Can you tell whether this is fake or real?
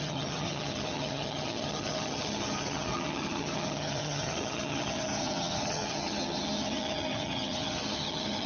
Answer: fake